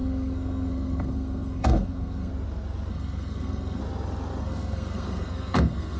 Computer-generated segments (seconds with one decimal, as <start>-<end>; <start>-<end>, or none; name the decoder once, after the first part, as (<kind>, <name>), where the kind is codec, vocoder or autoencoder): 0.0-2.3 (codec, SNAC); 2.9-3.8; 4.4-6.0